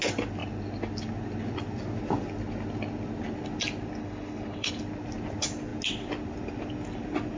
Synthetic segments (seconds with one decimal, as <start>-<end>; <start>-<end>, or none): 4.0-4.7